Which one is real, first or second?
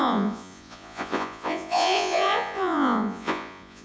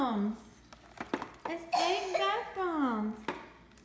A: second